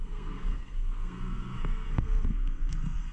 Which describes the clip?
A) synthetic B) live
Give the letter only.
A